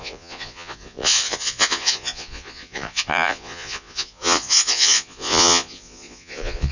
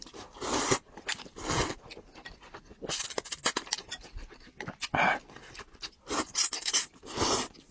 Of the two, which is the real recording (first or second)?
second